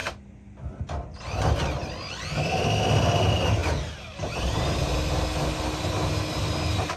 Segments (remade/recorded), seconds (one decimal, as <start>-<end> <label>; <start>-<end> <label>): 0.0-7.0 recorded